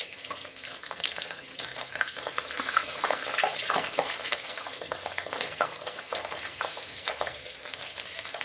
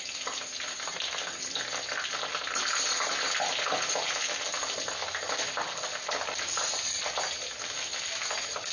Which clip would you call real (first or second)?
second